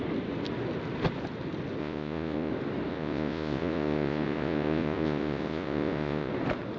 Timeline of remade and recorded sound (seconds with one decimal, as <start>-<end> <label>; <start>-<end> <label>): 0.0-1.8 recorded; 1.8-2.5 remade; 2.5-2.9 recorded; 2.9-6.3 remade; 6.3-6.8 recorded